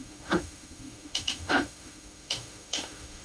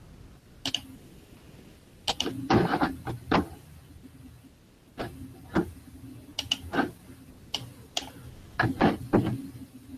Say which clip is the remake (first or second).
first